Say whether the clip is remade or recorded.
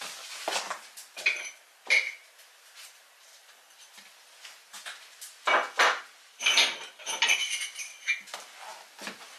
recorded